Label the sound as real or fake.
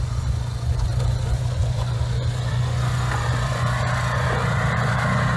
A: fake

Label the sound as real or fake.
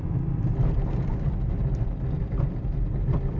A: real